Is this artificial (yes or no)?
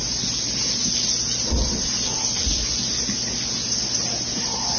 no